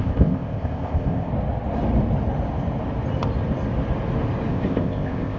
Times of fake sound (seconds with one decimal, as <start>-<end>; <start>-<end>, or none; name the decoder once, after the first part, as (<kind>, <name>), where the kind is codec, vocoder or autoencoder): 0.0-1.3 (codec, ZipCodec); 4.5-5.4